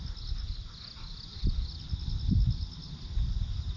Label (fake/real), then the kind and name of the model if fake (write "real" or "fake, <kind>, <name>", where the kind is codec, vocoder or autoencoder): real